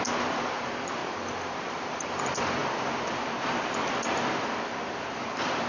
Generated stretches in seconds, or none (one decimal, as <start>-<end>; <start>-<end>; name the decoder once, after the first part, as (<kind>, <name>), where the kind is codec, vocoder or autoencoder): 1.0-2.1 (vocoder, BigVGAN v2)